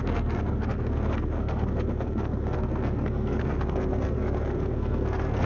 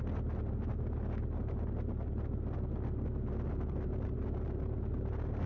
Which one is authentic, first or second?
second